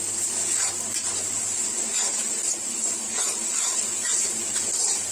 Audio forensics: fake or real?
real